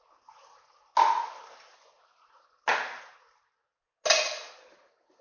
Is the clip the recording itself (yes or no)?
yes